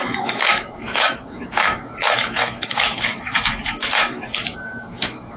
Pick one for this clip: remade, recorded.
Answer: remade